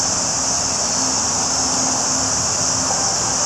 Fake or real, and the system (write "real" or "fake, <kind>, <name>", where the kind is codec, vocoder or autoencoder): real